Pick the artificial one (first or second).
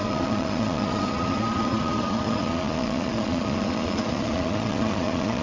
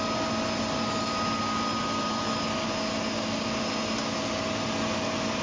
first